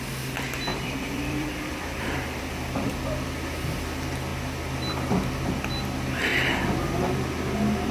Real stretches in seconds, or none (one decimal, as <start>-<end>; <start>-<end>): 0.0-0.7; 2.9-7.9